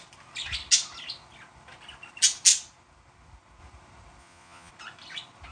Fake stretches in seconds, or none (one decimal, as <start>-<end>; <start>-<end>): 4.2-4.7